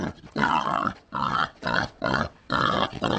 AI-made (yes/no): yes